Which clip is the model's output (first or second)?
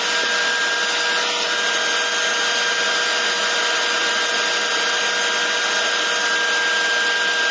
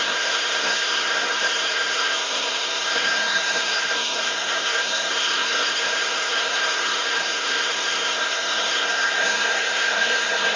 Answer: second